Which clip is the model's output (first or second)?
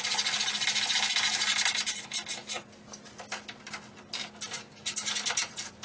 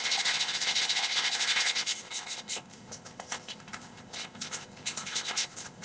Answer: second